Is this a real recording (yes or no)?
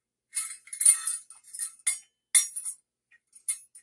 yes